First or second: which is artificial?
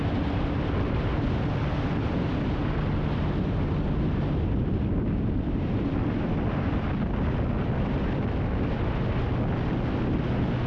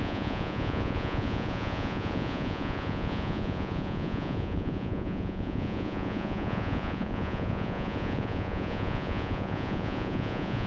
second